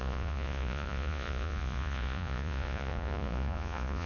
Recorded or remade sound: remade